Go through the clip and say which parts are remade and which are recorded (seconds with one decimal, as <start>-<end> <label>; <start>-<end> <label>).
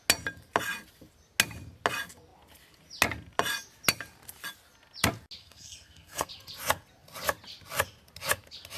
0.0-5.4 recorded; 5.4-6.3 remade; 6.3-8.8 recorded